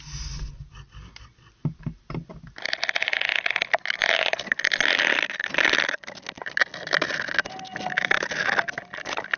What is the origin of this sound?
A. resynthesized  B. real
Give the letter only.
B